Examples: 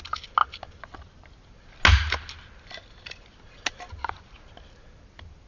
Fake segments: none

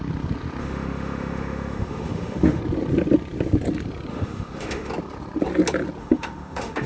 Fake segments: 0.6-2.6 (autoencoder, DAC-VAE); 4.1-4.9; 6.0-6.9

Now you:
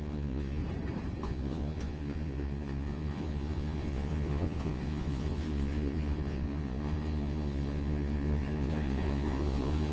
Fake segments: 0.0-0.6 (vocoder, Vocos); 1.2-9.9

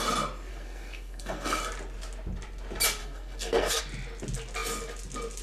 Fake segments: 0.5-1.6 (codec, SNAC); 3.0-3.8

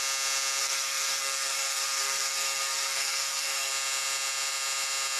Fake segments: 0.6-3.7 (codec, SNAC)

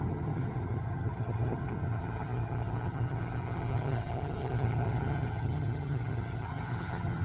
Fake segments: 0.0-7.2 (vocoder, HiFi-GAN)

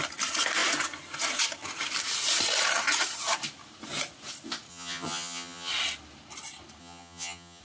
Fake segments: 4.7-5.7 (vocoder, HiFi-GAN); 6.8-7.6

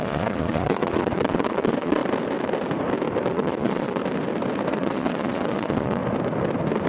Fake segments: 0.0-2.0 (vocoder, Vocos); 3.3-4.0; 4.7-6.0